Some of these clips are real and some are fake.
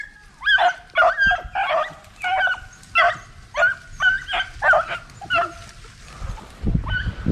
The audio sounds real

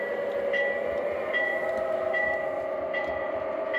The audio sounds real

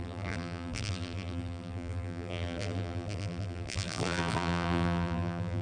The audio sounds fake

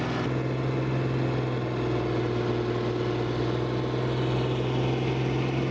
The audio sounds real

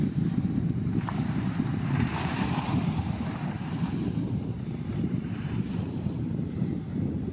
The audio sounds fake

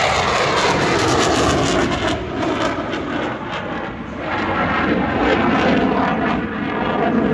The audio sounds real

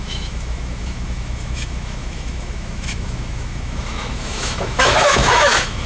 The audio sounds fake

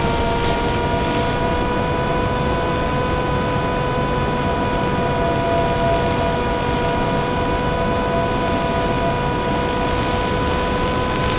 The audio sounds real